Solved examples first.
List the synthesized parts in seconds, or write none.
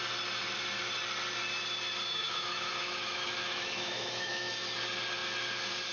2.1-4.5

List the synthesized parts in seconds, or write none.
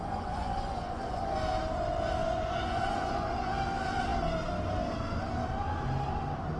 0.0-1.4; 2.2-3.5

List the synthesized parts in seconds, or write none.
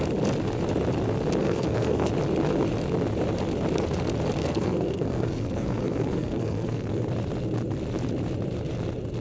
1.4-2.1; 4.4-7.0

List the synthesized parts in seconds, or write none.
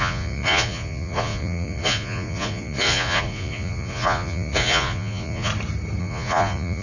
0.0-5.5; 6.0-6.8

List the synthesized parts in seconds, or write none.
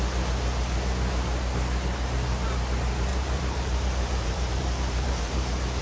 3.1-5.8